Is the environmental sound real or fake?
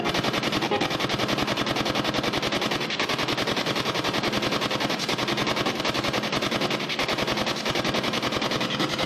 real